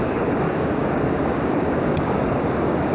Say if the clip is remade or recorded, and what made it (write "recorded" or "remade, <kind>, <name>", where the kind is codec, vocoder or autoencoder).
remade, codec, DAC